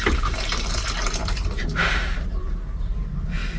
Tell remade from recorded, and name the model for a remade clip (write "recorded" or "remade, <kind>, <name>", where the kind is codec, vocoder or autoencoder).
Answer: remade, vocoder, BigVGAN v2